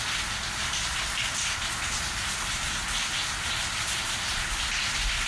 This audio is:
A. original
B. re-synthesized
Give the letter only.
A